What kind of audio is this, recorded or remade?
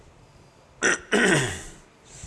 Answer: recorded